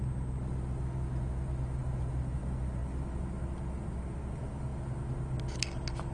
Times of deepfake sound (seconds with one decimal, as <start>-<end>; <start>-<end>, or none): none